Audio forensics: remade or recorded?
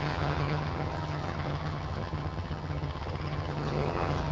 remade